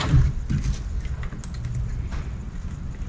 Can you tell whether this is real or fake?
real